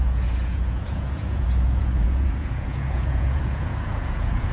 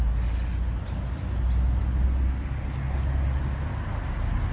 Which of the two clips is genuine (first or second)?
second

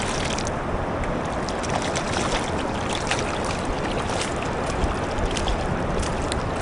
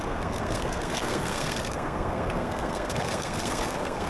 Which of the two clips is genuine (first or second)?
first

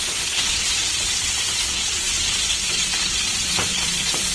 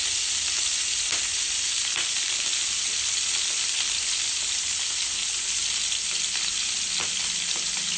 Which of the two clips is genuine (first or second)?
second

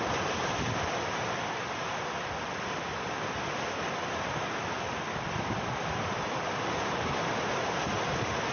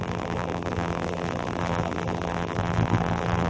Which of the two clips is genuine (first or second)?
first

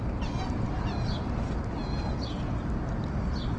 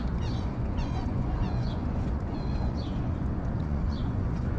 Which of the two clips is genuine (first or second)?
first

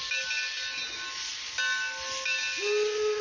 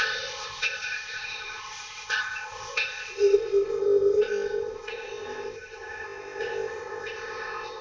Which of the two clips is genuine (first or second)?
first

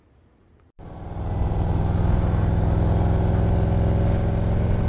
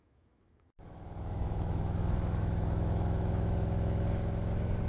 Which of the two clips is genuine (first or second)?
first